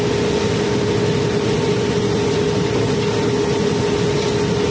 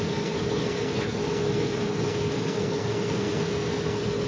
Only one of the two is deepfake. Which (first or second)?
second